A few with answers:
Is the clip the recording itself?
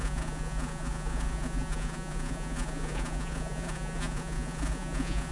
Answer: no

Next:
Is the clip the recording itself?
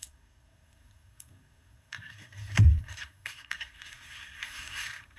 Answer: no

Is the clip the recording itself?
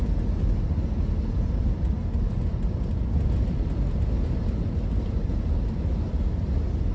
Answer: yes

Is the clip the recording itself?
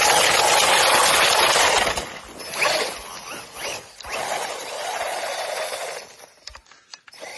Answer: yes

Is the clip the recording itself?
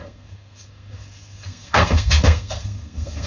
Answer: no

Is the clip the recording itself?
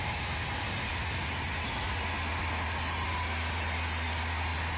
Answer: yes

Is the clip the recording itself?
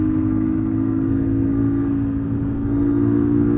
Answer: no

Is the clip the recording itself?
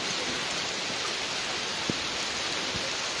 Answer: yes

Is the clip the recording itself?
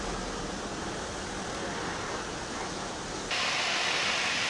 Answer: yes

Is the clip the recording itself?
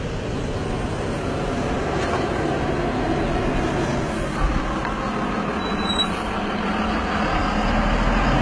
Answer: yes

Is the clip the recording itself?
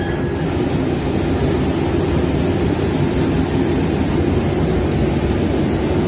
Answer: yes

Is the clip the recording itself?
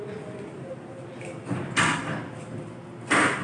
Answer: yes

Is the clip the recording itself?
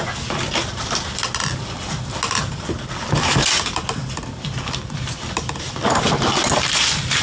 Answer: yes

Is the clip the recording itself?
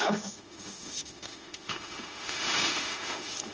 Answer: no